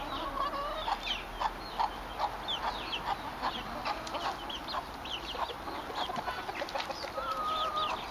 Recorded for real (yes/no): yes